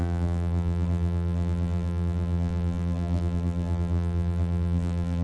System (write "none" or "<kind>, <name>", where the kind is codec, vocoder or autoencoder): vocoder, BigVGAN v2